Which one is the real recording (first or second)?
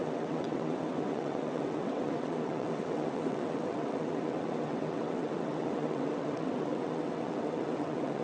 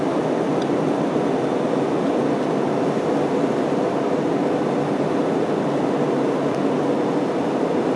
second